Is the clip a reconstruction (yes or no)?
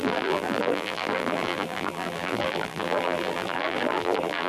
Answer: yes